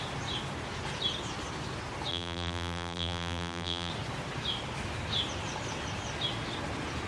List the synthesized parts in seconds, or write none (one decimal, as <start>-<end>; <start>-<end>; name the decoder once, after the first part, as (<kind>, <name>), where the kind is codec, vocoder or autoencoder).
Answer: 2.1-3.9 (vocoder, BigVGAN v2)

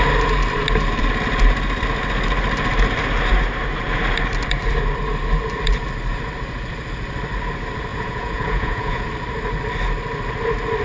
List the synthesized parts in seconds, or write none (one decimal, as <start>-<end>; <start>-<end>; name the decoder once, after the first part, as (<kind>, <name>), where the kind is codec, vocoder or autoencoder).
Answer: 7.9-9.1 (vocoder, Vocos)

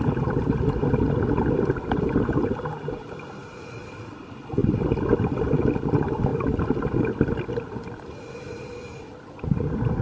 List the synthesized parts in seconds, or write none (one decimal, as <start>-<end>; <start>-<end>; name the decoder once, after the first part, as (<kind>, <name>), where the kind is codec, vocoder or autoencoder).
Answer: 4.6-5.1 (vocoder, BigVGAN v2)

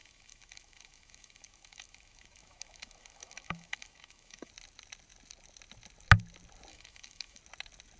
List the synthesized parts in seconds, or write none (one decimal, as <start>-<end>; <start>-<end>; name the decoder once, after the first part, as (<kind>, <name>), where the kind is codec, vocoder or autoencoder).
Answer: 0.0-4.5 (autoencoder, DAC-VAE); 6.7-7.4

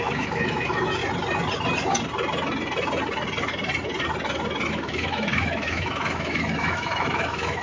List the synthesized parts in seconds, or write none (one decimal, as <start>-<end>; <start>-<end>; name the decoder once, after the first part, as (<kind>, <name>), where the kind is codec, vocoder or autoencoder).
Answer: 0.0-1.0 (autoencoder, DAC-VAE); 4.7-7.6

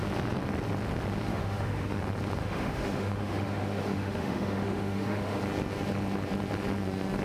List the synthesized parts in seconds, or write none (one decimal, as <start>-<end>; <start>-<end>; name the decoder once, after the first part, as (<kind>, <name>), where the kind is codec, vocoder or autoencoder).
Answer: 1.3-2.0 (autoencoder, DAC-VAE); 2.4-5.4